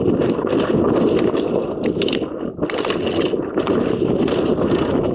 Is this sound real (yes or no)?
yes